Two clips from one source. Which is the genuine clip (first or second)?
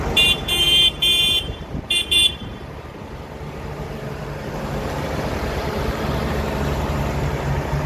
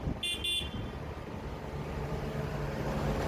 second